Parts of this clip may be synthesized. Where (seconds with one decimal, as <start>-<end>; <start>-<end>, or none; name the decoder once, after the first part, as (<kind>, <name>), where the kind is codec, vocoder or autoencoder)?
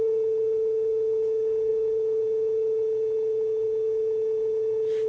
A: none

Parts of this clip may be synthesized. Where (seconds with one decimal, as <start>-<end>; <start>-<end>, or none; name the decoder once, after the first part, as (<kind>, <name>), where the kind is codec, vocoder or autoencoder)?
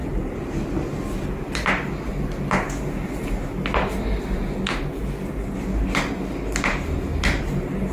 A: none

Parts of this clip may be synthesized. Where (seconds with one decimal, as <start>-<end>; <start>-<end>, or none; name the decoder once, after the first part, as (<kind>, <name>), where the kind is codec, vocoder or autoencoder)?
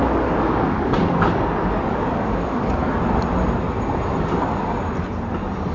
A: 0.0-3.0 (codec, DAC)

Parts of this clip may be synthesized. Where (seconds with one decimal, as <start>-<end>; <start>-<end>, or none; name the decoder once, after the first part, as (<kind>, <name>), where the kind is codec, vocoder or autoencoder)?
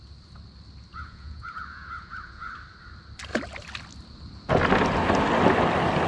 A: 0.9-2.5 (vocoder, Vocos)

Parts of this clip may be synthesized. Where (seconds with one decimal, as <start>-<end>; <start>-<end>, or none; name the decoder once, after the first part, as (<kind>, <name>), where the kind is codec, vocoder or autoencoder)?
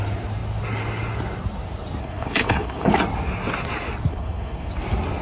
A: 2.0-2.9 (codec, HILCodec); 4.1-4.7